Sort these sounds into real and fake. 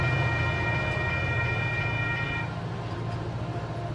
real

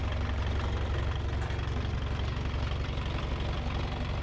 real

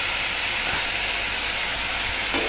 real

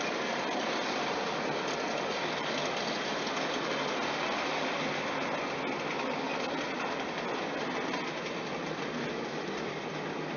real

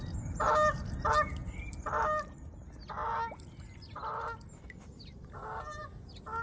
real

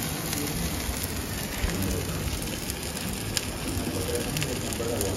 real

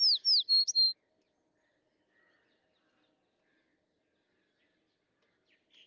real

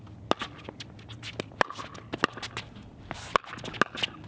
real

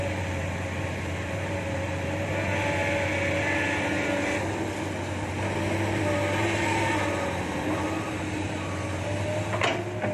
real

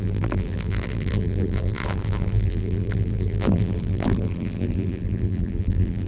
fake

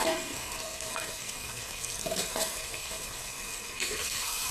fake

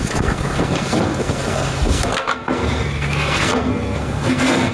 fake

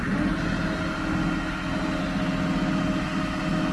real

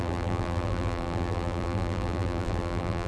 fake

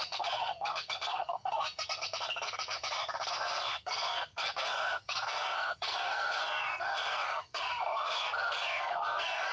fake